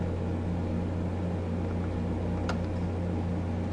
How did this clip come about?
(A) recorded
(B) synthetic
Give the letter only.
A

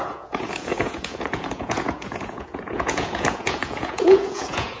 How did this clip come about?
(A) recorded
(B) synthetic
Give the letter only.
B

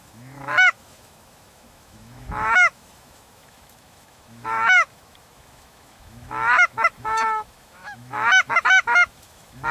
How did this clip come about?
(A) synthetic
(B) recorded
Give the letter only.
A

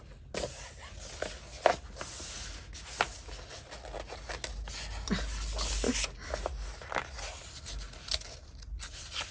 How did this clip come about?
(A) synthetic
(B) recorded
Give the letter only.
B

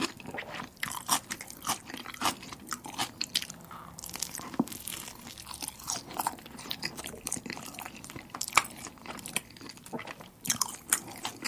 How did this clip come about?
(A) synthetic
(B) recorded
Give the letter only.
A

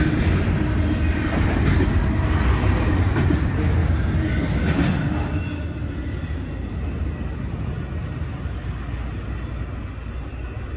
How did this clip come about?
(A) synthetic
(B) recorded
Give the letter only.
B